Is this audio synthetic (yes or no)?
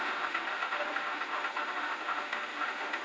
yes